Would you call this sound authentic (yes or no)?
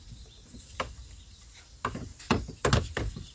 yes